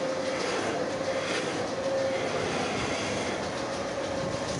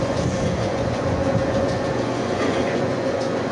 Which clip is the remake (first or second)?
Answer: second